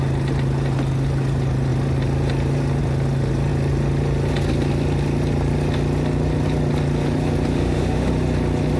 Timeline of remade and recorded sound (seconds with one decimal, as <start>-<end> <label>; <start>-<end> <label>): 0.0-7.5 recorded; 7.5-8.1 remade; 8.1-8.8 recorded